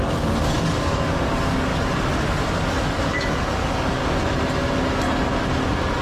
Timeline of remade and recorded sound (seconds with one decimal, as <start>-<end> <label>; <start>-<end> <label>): 0.0-1.7 remade; 1.7-2.9 recorded; 2.9-4.0 remade; 4.0-6.0 recorded